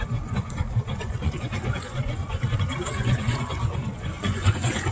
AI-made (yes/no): yes